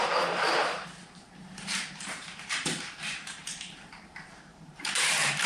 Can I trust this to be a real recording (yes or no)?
no